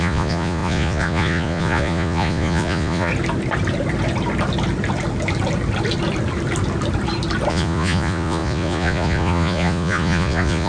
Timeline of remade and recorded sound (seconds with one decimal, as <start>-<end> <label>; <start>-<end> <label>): 0.0-3.1 remade; 3.1-7.5 recorded; 7.5-10.7 remade